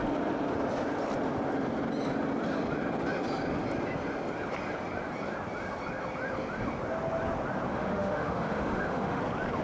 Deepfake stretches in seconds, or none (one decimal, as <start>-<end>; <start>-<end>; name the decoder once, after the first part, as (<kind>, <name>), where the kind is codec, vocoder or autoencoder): 7.7-9.2 (autoencoder, DAC-VAE)